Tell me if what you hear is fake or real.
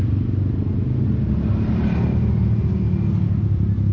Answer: real